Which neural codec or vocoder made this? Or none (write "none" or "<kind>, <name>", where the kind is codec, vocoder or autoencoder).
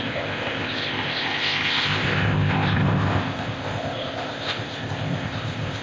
codec, ZipCodec